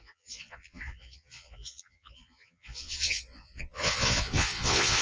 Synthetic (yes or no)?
yes